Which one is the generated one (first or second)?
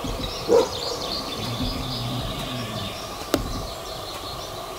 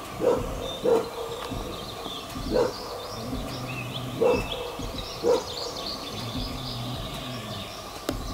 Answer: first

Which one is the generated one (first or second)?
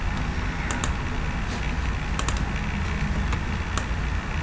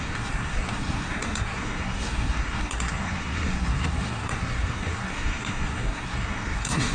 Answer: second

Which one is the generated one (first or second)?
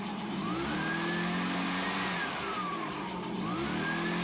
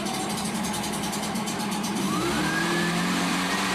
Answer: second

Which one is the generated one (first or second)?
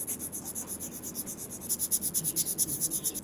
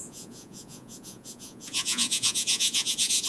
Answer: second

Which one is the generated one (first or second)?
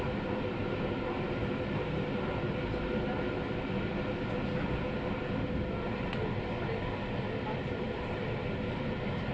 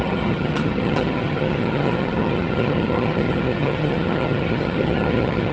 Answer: second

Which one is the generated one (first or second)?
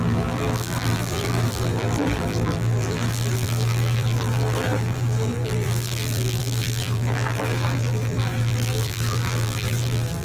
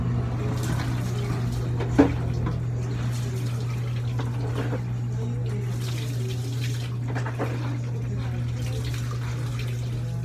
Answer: first